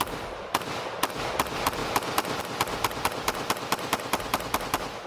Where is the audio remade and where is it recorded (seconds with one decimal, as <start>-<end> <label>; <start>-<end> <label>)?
0.0-5.1 recorded